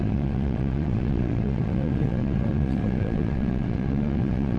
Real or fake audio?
fake